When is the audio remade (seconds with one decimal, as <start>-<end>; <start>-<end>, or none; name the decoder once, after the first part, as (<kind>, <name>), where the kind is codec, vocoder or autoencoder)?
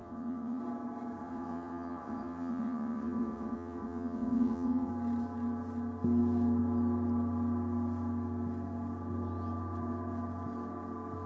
0.0-0.6 (vocoder, WaveNeXt); 1.2-4.9